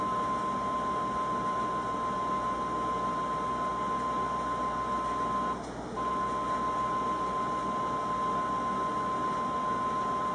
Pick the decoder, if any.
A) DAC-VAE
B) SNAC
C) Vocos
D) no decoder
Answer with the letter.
D